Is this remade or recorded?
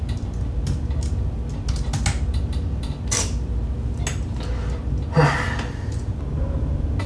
recorded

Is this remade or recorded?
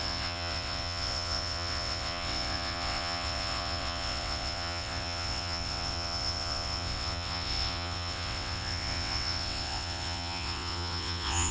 remade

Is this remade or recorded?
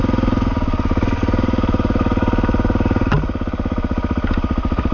recorded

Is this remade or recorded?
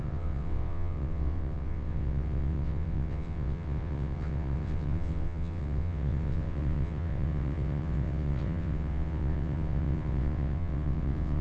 remade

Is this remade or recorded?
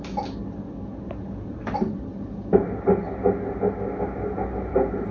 recorded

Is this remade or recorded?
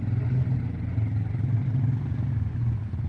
recorded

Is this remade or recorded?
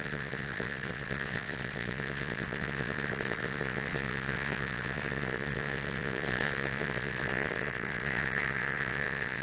remade